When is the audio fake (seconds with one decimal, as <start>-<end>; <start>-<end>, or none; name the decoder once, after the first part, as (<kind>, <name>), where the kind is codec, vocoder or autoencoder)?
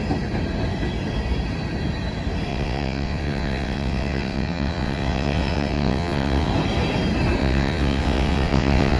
2.5-6.5 (vocoder, WaveNeXt); 7.4-9.0